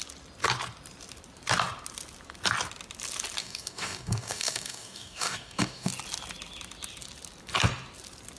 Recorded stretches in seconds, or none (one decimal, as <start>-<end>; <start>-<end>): 0.0-3.4; 5.9-8.4